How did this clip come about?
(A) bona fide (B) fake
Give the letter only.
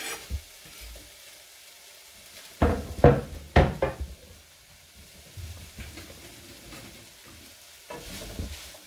A